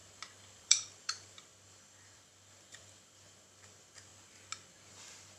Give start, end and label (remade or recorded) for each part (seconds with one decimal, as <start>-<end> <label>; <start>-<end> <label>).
0.0-0.6 recorded; 0.6-4.1 remade; 4.1-4.9 recorded; 4.9-5.4 remade